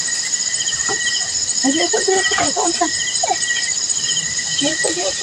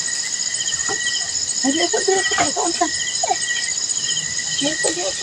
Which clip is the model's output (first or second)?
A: first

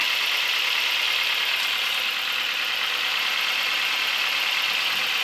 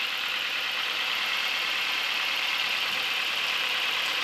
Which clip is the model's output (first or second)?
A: second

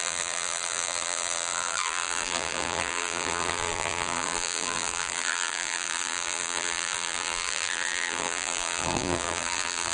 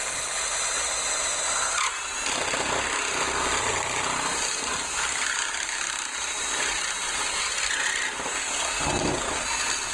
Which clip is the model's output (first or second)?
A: first